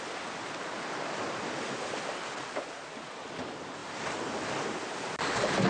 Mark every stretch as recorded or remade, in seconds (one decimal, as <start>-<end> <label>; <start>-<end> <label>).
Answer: 0.0-5.7 recorded